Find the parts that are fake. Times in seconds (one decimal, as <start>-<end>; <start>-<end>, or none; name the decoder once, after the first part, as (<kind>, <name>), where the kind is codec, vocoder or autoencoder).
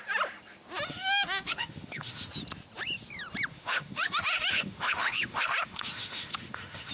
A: 0.9-2.3 (autoencoder, DAC-VAE); 3.5-6.9